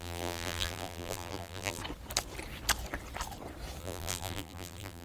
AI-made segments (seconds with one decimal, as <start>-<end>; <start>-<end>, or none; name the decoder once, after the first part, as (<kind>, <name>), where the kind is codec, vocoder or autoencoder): 0.0-1.8 (vocoder, BigVGAN v2); 3.8-5.0